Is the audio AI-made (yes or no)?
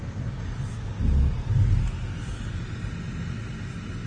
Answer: no